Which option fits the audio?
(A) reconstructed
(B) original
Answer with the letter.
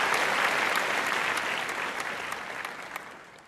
B